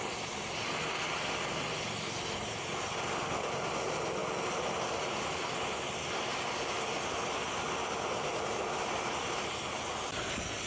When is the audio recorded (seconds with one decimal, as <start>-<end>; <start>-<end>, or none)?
0.0-10.7